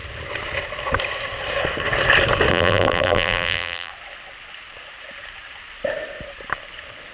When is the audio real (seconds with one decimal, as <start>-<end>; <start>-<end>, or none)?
0.0-2.5; 3.9-7.1